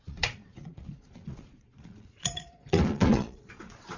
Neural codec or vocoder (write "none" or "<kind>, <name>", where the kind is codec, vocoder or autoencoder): vocoder, Vocos